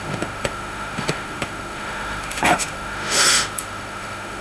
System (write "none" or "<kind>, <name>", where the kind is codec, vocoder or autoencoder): autoencoder, DAC-VAE